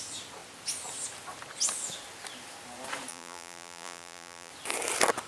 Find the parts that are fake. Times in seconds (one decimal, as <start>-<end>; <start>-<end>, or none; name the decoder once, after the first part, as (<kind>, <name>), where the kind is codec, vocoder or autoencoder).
3.1-4.5 (vocoder, BigVGAN v2)